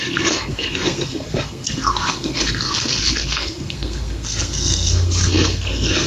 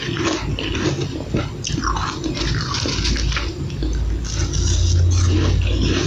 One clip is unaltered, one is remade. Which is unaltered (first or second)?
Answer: second